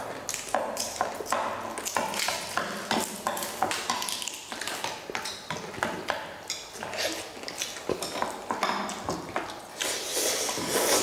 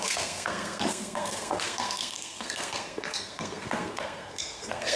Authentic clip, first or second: first